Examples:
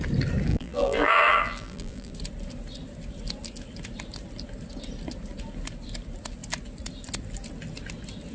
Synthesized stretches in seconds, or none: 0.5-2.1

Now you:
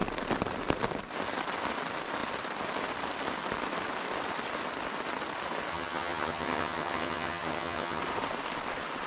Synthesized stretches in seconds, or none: 5.7-8.0

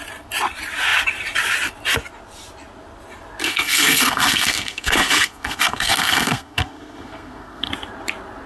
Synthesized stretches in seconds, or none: 3.4-7.7

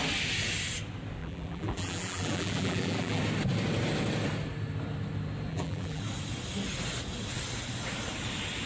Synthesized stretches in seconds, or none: 1.2-3.2; 5.5-6.0

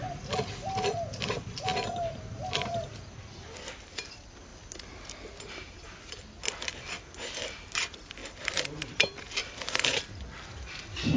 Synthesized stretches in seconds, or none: 8.2-9.2; 9.9-11.2

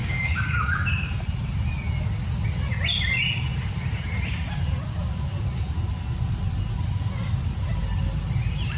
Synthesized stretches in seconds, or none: 0.0-1.2